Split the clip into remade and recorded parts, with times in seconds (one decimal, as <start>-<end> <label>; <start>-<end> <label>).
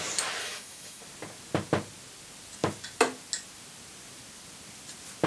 0.0-0.4 recorded; 0.4-1.0 remade; 1.0-5.3 recorded